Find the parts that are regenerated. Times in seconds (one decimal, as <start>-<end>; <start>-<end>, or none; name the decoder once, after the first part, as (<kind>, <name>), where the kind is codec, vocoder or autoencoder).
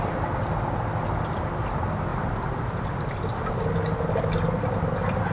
none